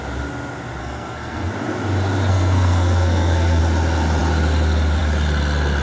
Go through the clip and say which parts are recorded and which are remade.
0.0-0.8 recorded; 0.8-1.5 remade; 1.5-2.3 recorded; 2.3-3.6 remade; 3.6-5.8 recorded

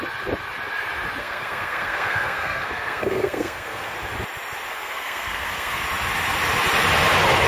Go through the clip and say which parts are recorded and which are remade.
0.0-1.2 recorded; 1.2-3.9 remade; 3.9-4.7 recorded; 4.7-5.8 remade; 5.8-7.5 recorded

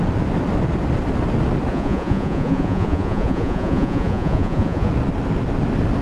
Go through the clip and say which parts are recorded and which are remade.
0.0-1.7 recorded; 1.7-4.9 remade; 4.9-6.0 recorded

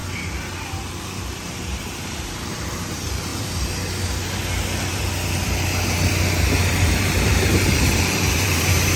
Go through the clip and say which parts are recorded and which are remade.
0.0-0.8 recorded; 0.8-3.3 remade; 3.3-6.6 recorded; 6.6-9.0 remade

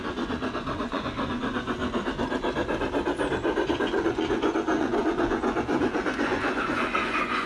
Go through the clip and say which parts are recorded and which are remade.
0.0-1.8 remade; 1.8-3.7 recorded; 3.7-7.5 remade

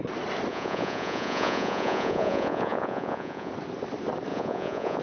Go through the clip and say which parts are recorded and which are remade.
0.0-0.5 recorded; 0.5-3.5 remade; 3.5-4.3 recorded; 4.3-5.0 remade

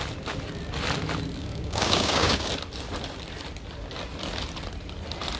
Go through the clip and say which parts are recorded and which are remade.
0.0-1.4 recorded; 1.4-2.5 remade; 2.5-5.4 recorded